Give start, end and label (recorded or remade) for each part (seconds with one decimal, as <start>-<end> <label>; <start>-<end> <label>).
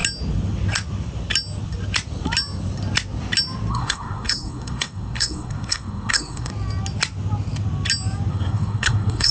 0.0-3.7 recorded; 3.7-6.5 remade; 6.5-8.3 recorded; 8.3-9.3 remade